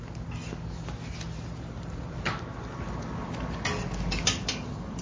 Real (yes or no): yes